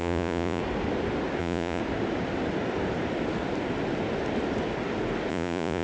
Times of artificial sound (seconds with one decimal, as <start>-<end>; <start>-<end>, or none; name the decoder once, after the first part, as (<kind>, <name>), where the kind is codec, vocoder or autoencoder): 0.0-0.6 (vocoder, Vocos); 1.4-1.8; 5.3-5.8

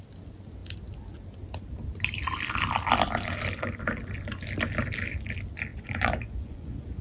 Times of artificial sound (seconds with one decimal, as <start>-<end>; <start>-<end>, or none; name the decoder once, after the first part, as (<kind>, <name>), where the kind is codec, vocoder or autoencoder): 5.7-7.0 (vocoder, Vocos)

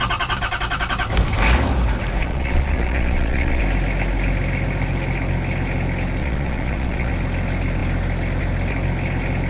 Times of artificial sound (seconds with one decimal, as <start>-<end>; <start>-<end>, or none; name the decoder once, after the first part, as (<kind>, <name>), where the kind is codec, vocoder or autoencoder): 2.2-3.6 (vocoder, Vocos); 6.2-7.1

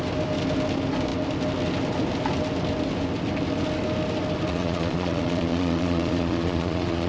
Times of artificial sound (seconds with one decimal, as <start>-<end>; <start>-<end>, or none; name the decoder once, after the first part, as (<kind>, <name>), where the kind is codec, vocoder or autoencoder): 4.5-7.1 (vocoder, Vocos)

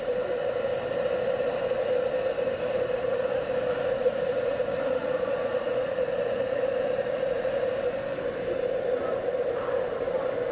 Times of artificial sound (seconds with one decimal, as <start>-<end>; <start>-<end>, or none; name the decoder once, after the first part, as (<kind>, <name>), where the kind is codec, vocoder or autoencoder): 4.0-7.7 (vocoder, Vocos)

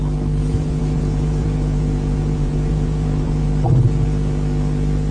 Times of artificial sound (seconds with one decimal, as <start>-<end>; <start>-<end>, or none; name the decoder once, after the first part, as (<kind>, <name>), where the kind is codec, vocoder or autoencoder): 0.4-3.5 (vocoder, Vocos)

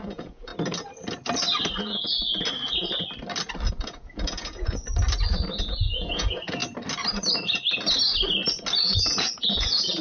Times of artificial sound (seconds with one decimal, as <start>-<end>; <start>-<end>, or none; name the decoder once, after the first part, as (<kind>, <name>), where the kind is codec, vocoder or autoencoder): 0.0-0.5 (vocoder, Vocos); 1.8-2.3; 3.7-4.8; 5.6-6.6; 8.8-10.0